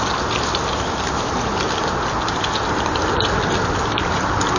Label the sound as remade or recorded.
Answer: recorded